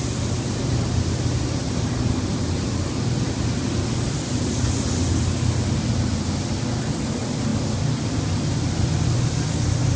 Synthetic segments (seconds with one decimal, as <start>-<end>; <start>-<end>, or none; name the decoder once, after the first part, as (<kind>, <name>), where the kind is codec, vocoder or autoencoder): none